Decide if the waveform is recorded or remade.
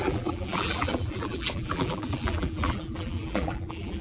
remade